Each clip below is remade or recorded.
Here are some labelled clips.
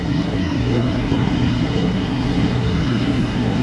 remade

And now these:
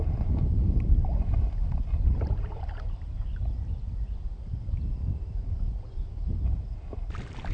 recorded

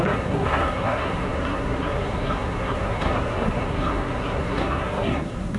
remade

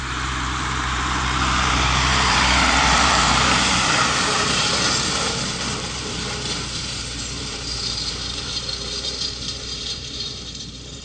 remade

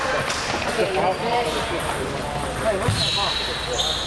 recorded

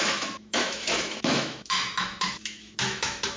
remade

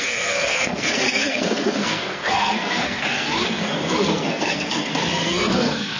remade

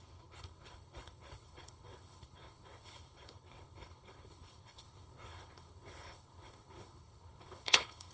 remade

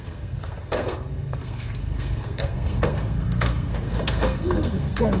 remade